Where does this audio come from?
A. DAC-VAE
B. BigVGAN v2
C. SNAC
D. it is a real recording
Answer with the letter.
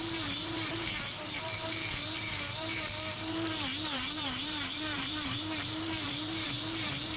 B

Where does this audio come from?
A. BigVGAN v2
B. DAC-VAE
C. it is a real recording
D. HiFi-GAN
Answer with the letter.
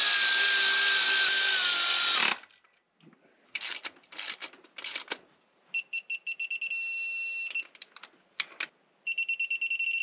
C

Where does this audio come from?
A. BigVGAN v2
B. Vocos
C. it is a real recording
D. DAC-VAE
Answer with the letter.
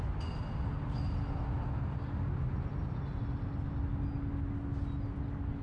C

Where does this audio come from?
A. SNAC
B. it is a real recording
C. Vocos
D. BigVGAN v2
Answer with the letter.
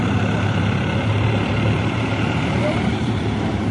D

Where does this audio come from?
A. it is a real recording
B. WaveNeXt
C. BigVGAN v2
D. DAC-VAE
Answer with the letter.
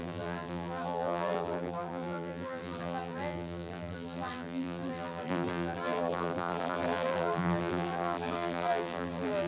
C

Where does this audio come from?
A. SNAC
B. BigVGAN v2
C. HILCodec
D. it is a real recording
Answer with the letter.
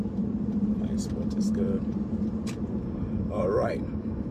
B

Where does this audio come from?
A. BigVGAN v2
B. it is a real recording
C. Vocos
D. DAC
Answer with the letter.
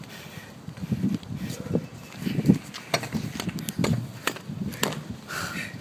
B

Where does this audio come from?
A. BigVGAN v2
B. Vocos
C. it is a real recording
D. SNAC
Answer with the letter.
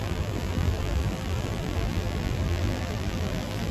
A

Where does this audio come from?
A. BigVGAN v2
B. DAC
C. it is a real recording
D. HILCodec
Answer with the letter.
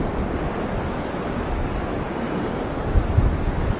A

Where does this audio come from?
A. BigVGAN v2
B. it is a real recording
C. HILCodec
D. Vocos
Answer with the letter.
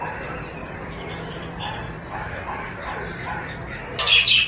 A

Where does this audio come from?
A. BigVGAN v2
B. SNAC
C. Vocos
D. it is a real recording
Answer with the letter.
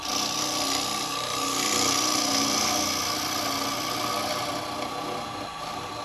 D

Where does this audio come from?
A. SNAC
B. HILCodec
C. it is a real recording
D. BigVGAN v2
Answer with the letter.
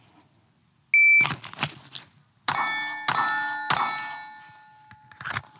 C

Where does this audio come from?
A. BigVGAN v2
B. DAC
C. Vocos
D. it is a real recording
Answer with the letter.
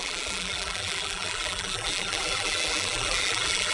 A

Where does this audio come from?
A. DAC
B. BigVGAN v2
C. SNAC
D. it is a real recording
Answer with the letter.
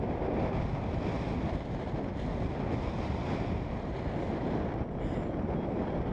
D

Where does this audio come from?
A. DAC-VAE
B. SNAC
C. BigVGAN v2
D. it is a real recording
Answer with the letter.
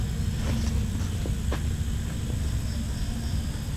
D